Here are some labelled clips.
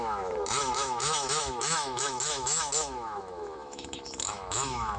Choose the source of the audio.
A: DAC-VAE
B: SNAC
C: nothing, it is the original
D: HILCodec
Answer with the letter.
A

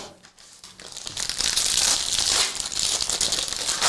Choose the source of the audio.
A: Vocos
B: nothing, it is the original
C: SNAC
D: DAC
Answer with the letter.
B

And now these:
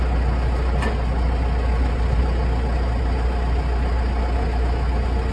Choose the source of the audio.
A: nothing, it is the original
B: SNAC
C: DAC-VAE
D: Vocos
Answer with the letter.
A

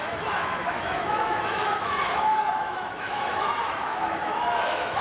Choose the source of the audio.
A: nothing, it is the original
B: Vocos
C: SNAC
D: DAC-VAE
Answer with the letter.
D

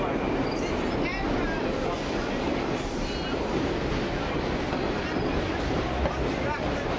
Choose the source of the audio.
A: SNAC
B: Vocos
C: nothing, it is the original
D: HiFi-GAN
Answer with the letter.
C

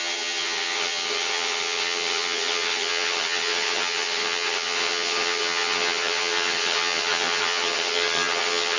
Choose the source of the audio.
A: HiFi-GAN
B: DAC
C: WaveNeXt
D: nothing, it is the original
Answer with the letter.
A